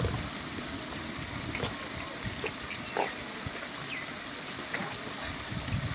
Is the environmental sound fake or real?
real